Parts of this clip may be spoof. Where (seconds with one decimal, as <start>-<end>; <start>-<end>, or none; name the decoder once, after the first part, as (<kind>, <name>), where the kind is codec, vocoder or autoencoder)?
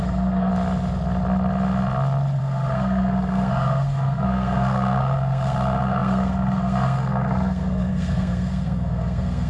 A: 0.0-0.5 (codec, SNAC); 2.4-9.5